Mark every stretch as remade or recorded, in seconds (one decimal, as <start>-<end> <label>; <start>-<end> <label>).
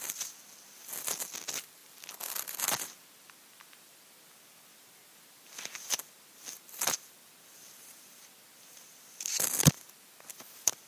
0.0-10.9 recorded